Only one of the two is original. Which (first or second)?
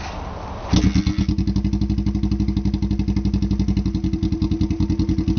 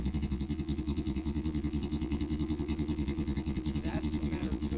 first